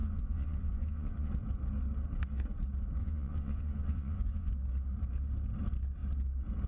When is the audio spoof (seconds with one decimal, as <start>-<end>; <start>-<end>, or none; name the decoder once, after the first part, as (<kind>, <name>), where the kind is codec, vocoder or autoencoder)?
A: 0.0-1.3 (vocoder, Vocos); 3.0-4.5